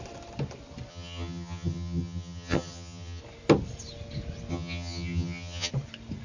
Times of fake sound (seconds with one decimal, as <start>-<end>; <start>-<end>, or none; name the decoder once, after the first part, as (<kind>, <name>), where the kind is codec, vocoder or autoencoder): 0.9-3.2 (vocoder, HiFi-GAN); 4.5-5.7